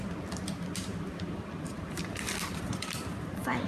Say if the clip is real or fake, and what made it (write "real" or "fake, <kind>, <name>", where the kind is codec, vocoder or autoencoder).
fake, vocoder, BigVGAN v2